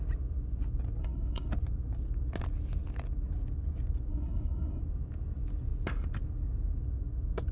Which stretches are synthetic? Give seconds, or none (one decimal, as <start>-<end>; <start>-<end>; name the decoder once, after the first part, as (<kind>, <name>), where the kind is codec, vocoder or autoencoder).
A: 1.0-1.5 (codec, HILCodec); 4.1-4.8